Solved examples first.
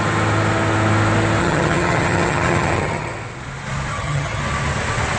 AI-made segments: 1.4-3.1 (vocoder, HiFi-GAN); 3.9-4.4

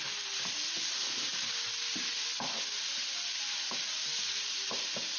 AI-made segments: none

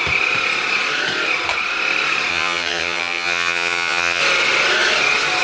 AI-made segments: 2.3-4.2 (vocoder, HiFi-GAN)

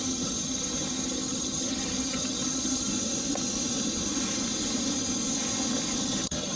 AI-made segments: 0.0-2.9 (vocoder, HiFi-GAN); 6.0-6.6

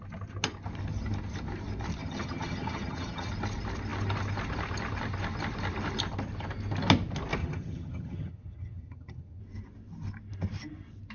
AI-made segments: 2.0-3.3 (vocoder, HiFi-GAN); 7.4-9.4

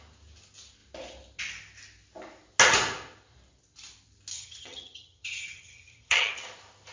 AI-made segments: 4.3-6.3 (vocoder, HiFi-GAN)

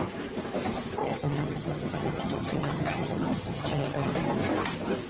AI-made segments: 1.0-4.1 (vocoder, HiFi-GAN)